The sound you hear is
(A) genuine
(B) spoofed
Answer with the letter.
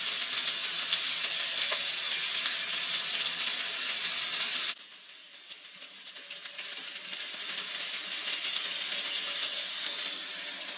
A